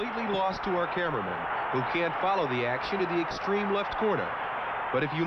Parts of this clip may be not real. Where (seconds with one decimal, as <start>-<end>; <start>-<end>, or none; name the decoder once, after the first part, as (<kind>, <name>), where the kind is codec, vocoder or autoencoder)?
none